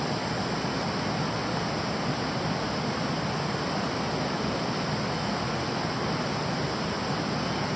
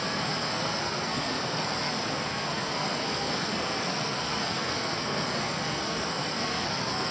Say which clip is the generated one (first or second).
second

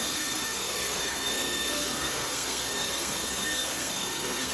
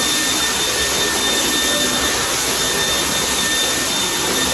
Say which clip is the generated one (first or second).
first